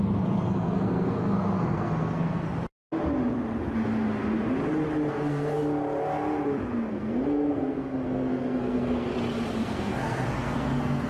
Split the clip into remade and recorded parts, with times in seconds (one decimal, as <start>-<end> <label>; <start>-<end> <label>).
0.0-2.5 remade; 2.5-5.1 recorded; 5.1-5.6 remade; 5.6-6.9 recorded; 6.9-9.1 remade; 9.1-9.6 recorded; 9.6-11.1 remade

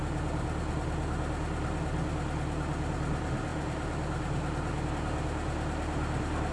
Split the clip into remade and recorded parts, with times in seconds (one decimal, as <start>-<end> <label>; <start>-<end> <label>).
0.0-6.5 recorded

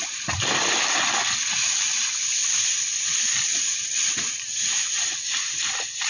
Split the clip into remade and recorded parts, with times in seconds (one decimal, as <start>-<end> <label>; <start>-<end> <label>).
0.0-2.4 recorded; 2.4-6.1 remade

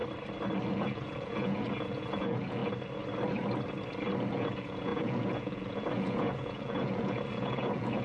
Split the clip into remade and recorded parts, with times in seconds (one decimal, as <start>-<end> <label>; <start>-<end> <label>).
0.0-0.7 recorded; 0.7-2.6 remade; 2.6-4.3 recorded; 4.3-8.0 remade

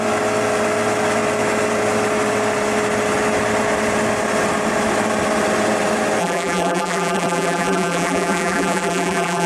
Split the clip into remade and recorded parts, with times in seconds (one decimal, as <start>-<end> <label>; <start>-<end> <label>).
0.0-6.2 recorded; 6.2-9.5 remade